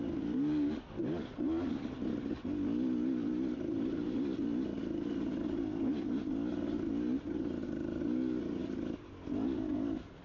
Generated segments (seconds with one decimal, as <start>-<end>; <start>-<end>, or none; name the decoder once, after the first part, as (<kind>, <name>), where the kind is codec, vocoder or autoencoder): none